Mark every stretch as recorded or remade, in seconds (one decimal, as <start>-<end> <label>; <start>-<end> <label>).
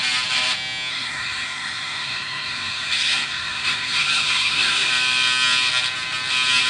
0.0-0.9 recorded; 0.9-4.9 remade; 4.9-6.7 recorded